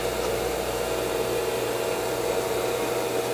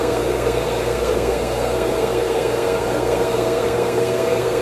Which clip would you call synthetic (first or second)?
second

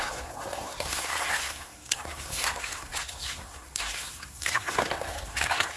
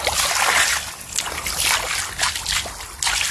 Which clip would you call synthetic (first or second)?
first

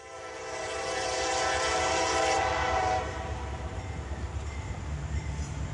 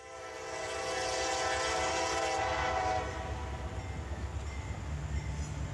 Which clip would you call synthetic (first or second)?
first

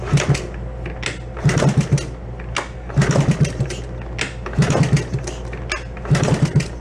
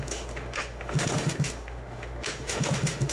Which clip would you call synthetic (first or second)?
second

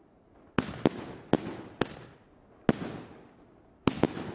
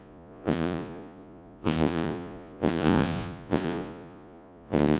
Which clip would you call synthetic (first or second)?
second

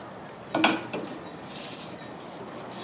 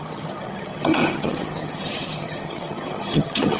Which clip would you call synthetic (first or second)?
second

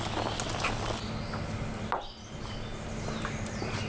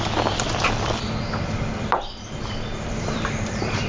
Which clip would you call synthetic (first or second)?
second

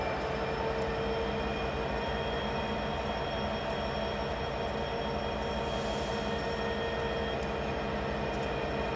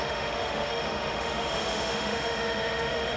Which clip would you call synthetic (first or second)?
second